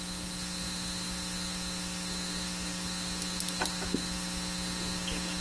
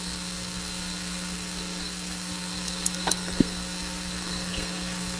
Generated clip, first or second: second